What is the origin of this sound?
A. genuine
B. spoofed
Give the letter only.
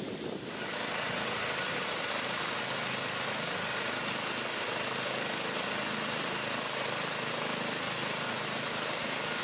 A